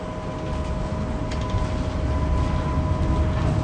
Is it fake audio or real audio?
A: real